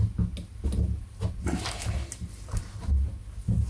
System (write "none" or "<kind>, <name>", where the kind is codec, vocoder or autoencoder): none